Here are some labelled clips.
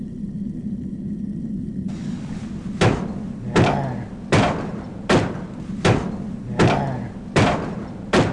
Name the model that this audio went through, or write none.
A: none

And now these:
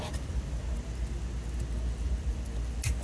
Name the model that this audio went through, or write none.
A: none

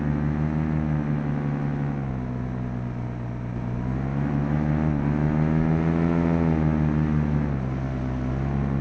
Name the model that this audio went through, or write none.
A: none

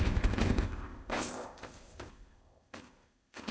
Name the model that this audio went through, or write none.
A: codec, ZipCodec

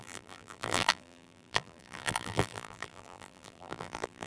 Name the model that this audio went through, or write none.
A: vocoder, BigVGAN v2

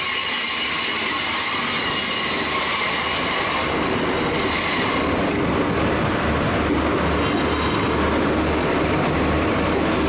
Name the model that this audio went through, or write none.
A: none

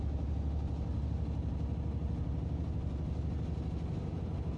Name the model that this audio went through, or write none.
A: none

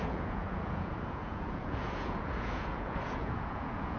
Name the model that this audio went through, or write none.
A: vocoder, Vocos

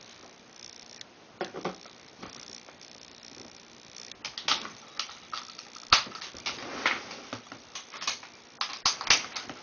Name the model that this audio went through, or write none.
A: none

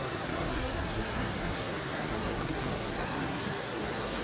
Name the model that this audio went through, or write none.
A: codec, SNAC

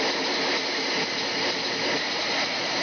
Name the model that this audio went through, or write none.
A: none